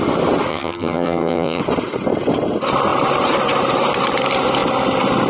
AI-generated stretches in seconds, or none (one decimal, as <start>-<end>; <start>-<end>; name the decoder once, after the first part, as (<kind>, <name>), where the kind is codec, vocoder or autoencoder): 0.5-1.6 (vocoder, HiFi-GAN)